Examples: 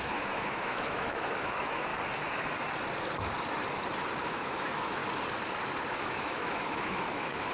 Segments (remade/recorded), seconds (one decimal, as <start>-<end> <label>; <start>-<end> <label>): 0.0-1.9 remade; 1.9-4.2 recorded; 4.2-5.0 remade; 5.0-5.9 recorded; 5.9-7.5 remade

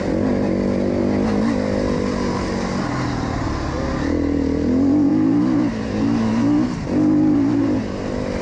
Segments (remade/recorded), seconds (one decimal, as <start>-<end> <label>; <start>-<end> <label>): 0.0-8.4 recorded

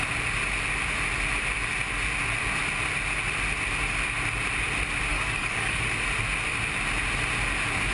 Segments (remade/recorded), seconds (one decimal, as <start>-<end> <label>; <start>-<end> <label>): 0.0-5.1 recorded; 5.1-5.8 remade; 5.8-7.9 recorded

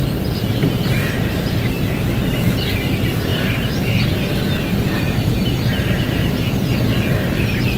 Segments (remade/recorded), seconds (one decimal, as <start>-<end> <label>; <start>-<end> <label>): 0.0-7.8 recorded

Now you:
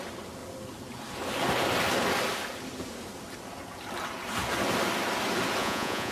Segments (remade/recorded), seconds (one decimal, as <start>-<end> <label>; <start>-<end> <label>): 0.0-5.6 recorded; 5.6-6.1 remade

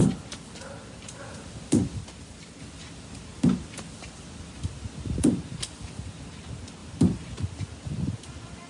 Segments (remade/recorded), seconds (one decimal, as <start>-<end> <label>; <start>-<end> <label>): 0.0-1.2 remade; 1.2-2.0 recorded; 2.0-2.6 remade; 2.6-6.8 recorded; 6.8-8.2 remade; 8.2-8.7 recorded

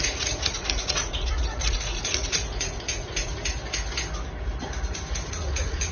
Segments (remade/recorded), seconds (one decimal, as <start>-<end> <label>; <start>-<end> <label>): 0.0-3.3 remade; 3.3-5.3 recorded; 5.3-5.9 remade

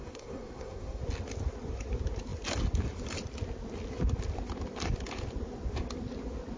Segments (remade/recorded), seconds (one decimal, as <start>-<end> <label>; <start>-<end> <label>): 0.0-1.0 remade; 1.0-6.6 recorded